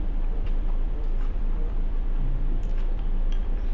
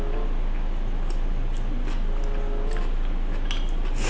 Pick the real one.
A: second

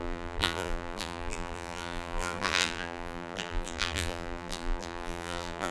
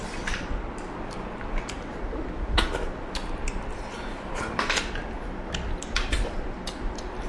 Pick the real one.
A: second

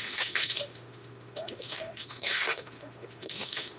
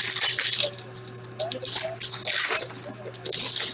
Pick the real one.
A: second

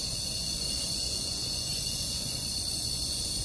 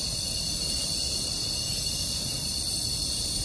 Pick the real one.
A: second